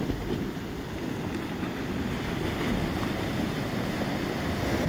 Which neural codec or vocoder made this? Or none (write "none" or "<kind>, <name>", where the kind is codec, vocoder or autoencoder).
none